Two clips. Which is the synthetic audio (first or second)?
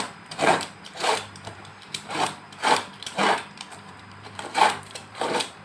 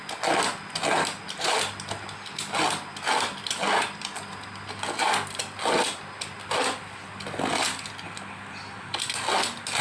first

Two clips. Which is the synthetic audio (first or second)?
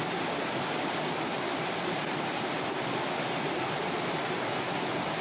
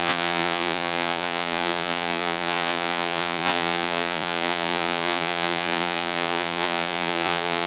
second